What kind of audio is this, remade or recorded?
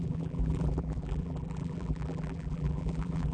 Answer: remade